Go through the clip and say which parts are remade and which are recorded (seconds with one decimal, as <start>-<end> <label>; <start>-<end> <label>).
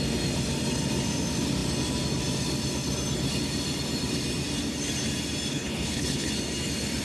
0.0-5.5 recorded; 5.5-6.3 remade; 6.3-7.0 recorded